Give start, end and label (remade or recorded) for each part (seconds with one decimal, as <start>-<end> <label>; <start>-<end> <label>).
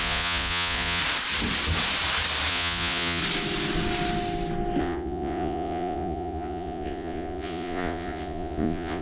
0.0-1.0 remade; 1.0-2.5 recorded; 2.5-3.2 remade; 3.2-4.8 recorded; 4.8-9.0 remade